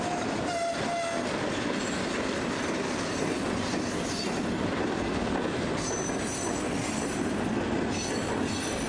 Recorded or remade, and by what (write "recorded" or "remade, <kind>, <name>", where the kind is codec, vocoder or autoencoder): recorded